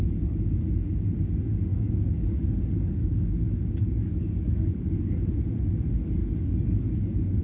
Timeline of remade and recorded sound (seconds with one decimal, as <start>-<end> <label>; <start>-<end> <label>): 0.0-1.7 recorded; 1.7-5.3 remade; 5.3-6.2 recorded; 6.2-7.4 remade